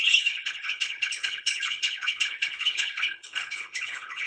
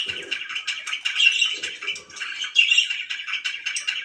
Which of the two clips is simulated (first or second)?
first